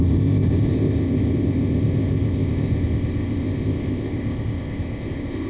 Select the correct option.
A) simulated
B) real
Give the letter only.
A